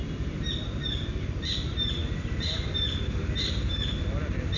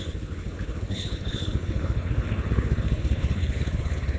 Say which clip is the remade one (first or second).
second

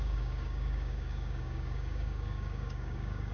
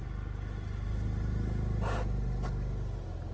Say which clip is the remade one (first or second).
first